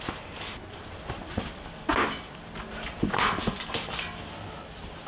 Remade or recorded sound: recorded